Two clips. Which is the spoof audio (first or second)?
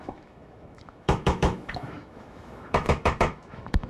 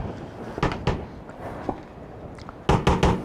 first